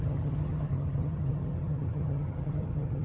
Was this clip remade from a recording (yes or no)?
yes